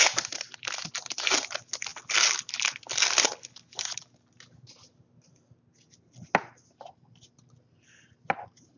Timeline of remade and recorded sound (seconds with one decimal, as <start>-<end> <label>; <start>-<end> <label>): 0.0-8.8 recorded